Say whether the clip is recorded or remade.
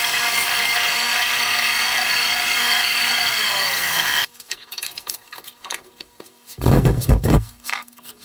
remade